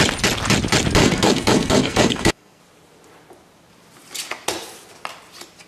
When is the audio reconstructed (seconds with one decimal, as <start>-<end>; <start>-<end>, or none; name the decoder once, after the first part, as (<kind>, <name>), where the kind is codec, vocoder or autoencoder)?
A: 1.0-2.6 (codec, SNAC)